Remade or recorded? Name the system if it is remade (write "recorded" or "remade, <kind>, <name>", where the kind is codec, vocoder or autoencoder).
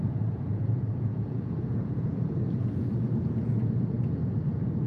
remade, vocoder, Vocos